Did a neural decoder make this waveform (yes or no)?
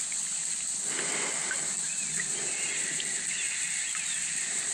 no